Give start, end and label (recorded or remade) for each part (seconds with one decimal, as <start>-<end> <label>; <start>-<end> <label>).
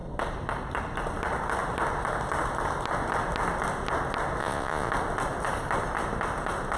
0.0-4.4 recorded; 4.4-4.9 remade; 4.9-6.8 recorded